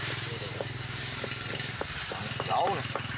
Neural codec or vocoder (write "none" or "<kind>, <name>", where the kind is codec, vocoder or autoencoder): none